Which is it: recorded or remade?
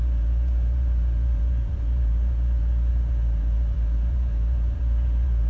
remade